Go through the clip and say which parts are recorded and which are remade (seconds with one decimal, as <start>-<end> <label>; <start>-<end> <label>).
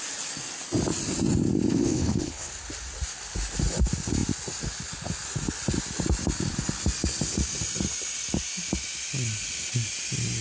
0.0-1.7 recorded; 1.7-2.5 remade; 2.5-10.4 recorded